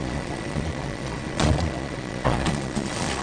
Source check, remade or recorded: remade